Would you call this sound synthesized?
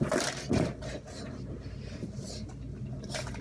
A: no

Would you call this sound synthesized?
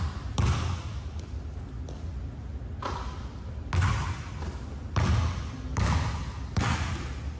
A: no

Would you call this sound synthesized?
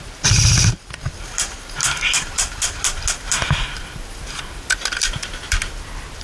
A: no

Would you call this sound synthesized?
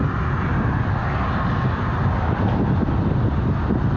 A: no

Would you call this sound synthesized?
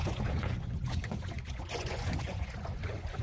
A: yes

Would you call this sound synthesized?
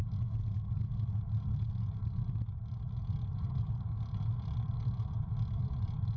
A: no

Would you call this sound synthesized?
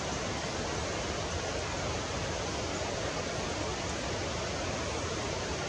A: no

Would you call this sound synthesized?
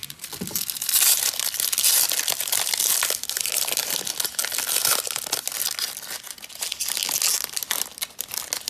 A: no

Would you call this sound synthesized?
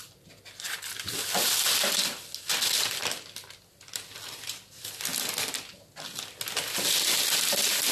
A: no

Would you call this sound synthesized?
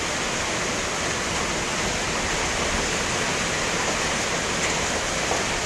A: no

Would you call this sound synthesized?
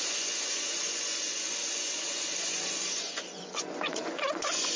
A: yes